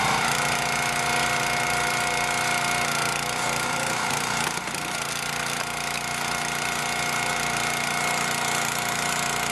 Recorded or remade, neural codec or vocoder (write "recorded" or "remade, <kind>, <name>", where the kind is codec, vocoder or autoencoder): recorded